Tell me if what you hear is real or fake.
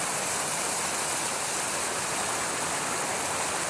real